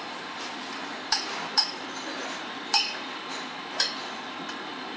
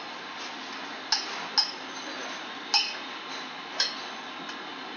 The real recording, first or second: second